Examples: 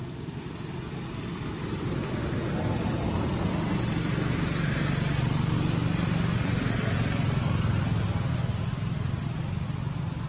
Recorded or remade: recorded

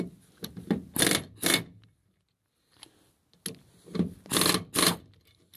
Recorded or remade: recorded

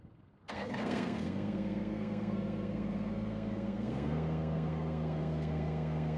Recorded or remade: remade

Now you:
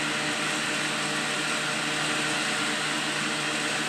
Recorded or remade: recorded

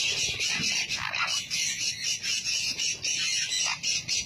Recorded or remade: recorded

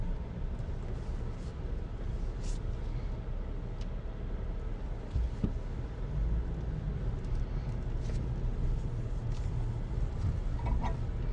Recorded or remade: recorded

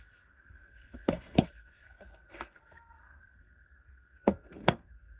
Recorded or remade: remade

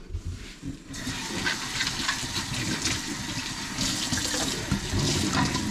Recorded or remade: recorded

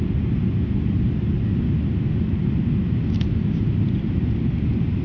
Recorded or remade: recorded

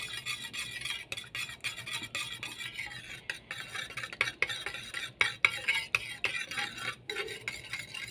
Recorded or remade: recorded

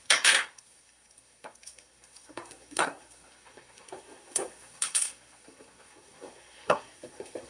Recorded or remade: remade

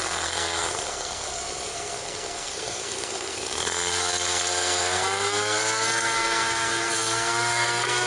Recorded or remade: remade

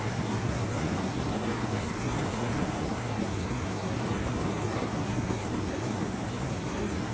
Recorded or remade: remade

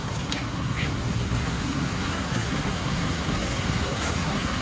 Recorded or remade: remade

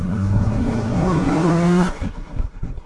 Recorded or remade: remade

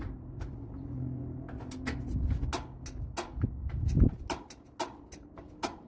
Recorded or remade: recorded